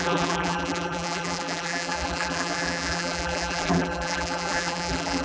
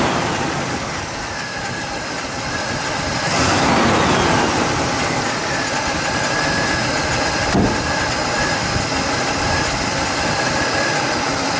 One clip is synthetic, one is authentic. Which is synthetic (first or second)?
first